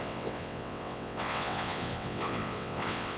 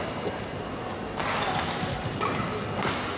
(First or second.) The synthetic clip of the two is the first